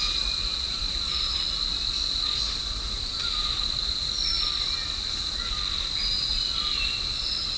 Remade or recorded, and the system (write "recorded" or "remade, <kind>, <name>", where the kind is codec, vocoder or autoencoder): recorded